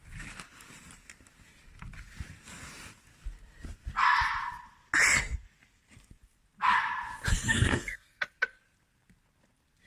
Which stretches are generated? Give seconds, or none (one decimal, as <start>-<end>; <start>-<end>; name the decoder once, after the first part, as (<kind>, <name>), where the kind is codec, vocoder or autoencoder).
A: 7.5-8.2 (codec, SNAC)